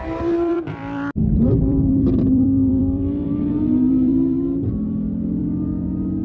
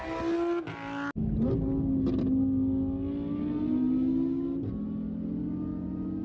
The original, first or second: second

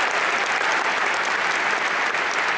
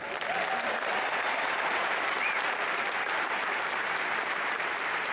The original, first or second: first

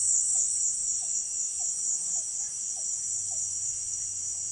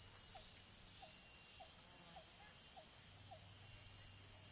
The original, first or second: second